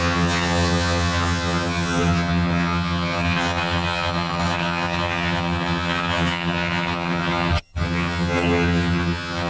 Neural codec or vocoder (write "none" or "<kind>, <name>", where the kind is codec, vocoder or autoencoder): vocoder, HiFi-GAN